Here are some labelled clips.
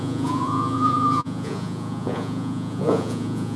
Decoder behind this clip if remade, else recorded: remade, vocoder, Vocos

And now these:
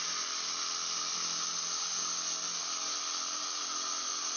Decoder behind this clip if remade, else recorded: recorded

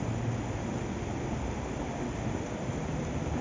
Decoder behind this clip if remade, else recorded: recorded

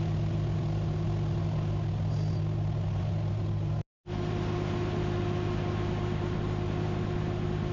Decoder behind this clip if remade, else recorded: recorded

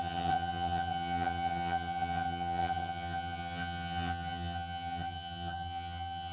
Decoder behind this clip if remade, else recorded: remade, vocoder, HiFi-GAN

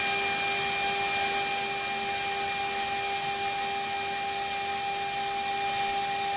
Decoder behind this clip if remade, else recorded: recorded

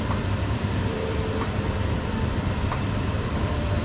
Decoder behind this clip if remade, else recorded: remade, vocoder, BigVGAN v2